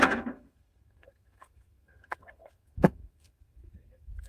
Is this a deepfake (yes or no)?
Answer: yes